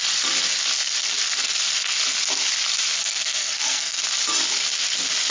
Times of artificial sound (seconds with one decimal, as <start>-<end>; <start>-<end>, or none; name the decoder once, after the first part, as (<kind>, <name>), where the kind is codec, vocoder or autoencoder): 3.0-4.0 (codec, SNAC)